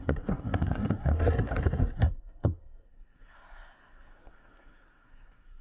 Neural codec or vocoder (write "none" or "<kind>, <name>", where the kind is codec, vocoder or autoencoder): codec, SNAC